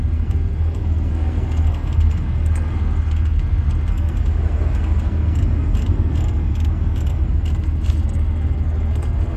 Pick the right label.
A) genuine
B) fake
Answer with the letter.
B